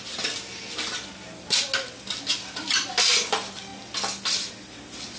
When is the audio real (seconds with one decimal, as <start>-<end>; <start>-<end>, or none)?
0.0-5.2